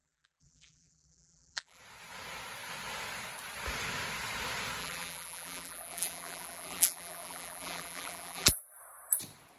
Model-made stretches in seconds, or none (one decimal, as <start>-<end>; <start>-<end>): 0.0-1.8; 4.8-8.8